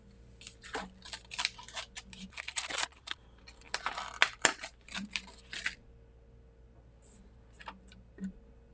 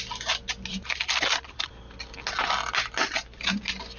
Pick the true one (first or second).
second